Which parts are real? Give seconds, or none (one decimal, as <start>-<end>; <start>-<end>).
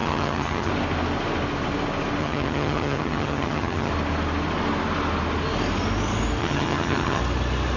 0.7-2.2; 3.9-6.4; 7.2-7.8